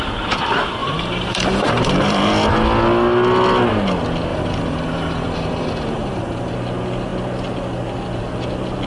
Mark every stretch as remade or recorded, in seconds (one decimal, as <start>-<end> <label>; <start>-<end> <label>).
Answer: 0.0-0.8 recorded; 0.8-2.3 remade; 2.3-4.3 recorded; 4.3-6.5 remade; 6.5-8.9 recorded